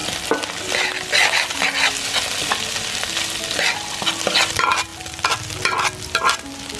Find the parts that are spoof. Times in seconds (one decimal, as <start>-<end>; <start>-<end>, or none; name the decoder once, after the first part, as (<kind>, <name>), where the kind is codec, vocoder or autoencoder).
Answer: 4.1-4.9 (vocoder, BigVGAN v2); 6.0-6.8